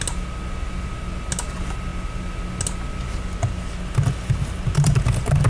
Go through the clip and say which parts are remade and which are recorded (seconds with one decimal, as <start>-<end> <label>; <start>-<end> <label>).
0.0-5.5 recorded